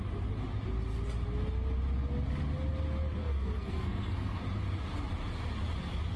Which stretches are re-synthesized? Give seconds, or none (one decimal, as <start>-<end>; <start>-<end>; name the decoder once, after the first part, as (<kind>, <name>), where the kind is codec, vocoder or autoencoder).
3.2-4.4 (codec, SNAC)